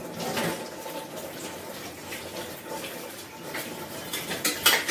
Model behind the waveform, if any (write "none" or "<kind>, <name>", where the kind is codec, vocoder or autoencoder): none